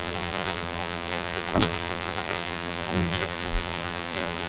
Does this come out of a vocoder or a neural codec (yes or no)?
yes